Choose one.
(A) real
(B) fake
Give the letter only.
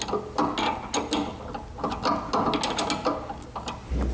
A